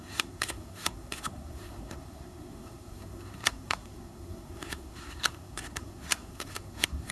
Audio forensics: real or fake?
fake